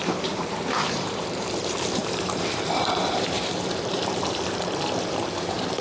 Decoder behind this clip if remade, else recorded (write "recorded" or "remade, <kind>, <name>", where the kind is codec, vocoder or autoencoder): remade, vocoder, BigVGAN v2